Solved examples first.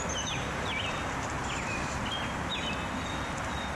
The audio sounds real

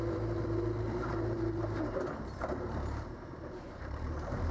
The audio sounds fake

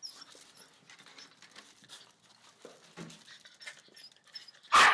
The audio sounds real